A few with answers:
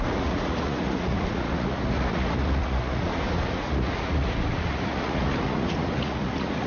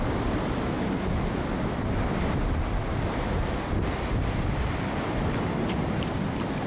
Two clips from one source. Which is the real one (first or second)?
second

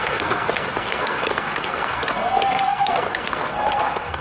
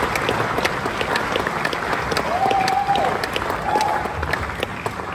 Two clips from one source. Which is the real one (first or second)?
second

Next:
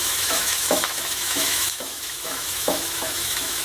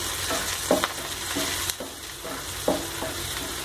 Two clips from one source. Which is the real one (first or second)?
second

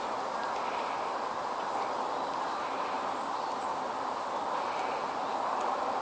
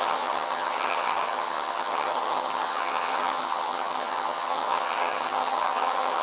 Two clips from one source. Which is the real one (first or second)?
first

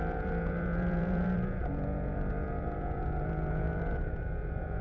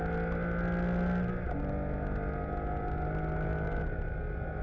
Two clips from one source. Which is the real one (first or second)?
second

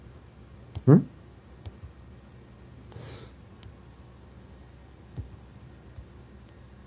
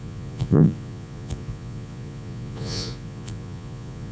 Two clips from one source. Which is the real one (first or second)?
first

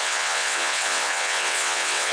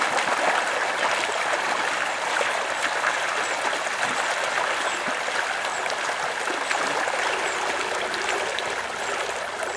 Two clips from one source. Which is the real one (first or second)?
second